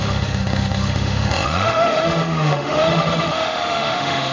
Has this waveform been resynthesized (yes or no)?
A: yes